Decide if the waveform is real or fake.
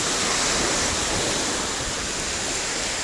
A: real